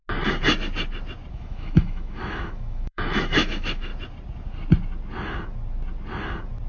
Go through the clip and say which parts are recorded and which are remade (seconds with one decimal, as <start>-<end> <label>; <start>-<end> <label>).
0.0-1.3 recorded; 1.3-3.9 remade; 3.9-6.7 recorded

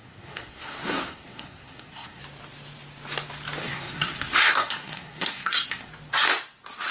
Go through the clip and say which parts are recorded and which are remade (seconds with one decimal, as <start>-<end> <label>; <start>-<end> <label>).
0.0-2.2 remade; 2.2-3.6 recorded; 3.6-5.9 remade; 5.9-6.9 recorded